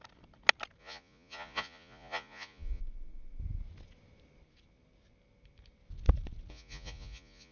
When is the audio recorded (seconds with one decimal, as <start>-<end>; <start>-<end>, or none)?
0.0-0.8; 2.8-6.5